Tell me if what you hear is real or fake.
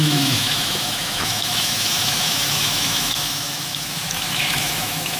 fake